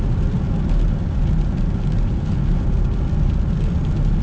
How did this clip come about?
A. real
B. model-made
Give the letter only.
A